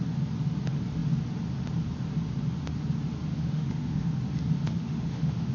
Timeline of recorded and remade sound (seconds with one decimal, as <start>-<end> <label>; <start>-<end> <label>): 0.0-3.3 recorded; 3.3-4.2 remade; 4.2-4.8 recorded; 4.8-5.5 remade